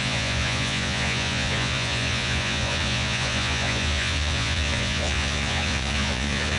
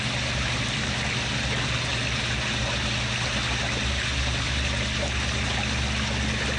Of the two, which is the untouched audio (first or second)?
second